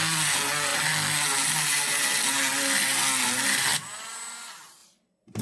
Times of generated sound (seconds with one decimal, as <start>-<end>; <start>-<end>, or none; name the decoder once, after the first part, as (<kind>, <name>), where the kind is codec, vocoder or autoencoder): none